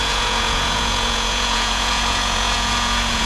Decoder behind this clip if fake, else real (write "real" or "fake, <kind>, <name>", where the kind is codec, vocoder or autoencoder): fake, vocoder, Vocos